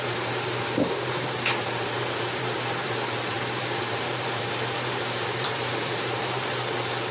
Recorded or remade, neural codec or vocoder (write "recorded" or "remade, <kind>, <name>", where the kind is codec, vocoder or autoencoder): remade, vocoder, BigVGAN v2